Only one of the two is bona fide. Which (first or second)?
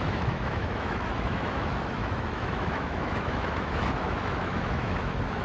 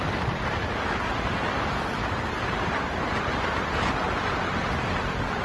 second